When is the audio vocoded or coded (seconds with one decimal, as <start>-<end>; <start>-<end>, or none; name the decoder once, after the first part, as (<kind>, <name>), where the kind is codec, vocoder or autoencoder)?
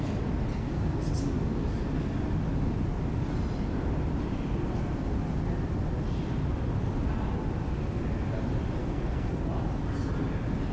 0.5-1.0 (codec, SNAC); 8.8-9.4